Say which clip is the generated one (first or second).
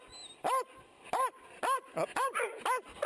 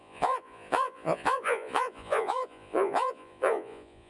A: second